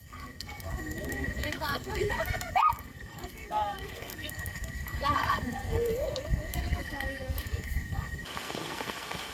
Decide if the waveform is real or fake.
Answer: fake